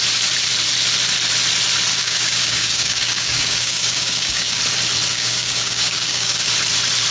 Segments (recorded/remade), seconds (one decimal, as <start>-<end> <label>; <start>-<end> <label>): 0.0-1.9 recorded; 1.9-4.6 remade; 4.6-5.1 recorded; 5.1-6.5 remade; 6.5-7.1 recorded